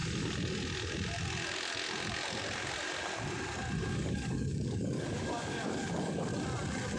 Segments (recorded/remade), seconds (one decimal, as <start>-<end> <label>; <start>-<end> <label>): 0.0-3.8 recorded; 3.8-6.3 remade; 6.3-7.0 recorded